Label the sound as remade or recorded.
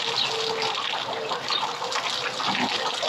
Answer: recorded